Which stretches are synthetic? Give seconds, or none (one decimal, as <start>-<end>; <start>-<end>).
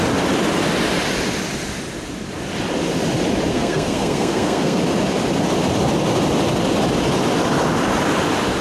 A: 3.5-4.8